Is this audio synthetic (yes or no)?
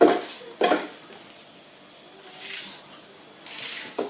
no